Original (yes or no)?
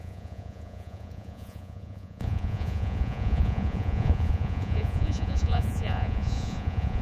no